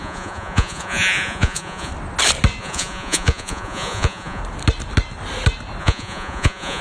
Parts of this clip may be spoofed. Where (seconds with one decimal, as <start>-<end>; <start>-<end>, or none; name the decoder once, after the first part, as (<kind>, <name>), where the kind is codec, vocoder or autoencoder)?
0.0-1.9 (vocoder, Vocos); 2.6-4.4; 5.8-6.8